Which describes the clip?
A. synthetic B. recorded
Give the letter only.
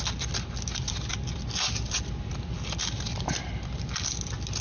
B